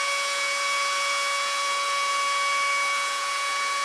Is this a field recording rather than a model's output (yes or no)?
no